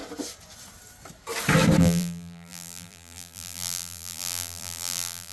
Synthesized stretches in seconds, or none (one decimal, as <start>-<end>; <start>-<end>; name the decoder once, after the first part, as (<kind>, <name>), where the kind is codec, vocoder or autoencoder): 1.8-5.3 (vocoder, BigVGAN v2)